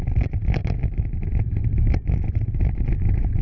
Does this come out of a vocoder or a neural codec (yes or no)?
yes